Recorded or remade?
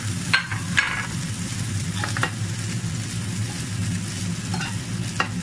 recorded